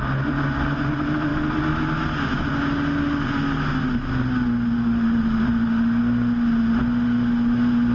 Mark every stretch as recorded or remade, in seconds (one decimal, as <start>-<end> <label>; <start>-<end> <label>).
0.0-7.9 recorded